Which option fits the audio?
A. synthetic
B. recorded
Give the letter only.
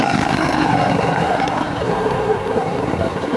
A